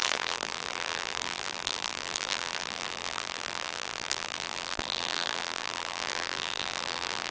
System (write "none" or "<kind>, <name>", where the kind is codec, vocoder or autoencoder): vocoder, BigVGAN v2